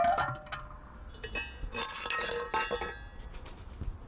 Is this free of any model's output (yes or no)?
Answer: yes